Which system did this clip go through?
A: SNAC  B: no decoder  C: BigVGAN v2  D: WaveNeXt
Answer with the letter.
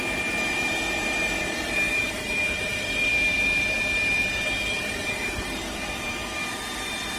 C